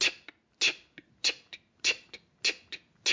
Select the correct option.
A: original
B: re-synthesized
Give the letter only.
A